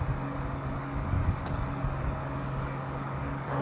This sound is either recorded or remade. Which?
remade